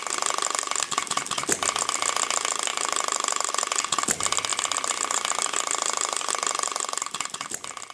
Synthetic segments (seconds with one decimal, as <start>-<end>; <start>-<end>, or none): 2.7-3.5; 4.5-6.3